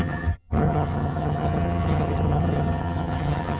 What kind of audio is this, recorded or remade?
remade